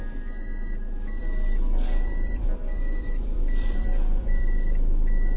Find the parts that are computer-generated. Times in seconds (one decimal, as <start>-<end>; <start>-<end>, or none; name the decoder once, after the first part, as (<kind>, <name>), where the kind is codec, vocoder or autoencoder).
1.2-4.4 (vocoder, BigVGAN v2)